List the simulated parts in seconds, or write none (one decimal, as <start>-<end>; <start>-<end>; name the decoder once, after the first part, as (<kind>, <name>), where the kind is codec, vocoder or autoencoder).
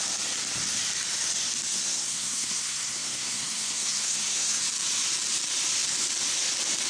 1.7-4.6 (codec, SNAC)